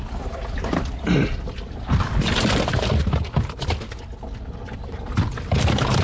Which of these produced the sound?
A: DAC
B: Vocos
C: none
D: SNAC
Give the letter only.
C